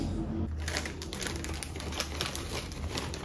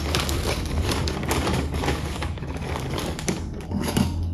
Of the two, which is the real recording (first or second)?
first